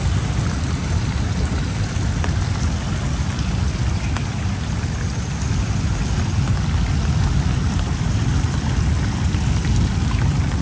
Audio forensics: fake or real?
real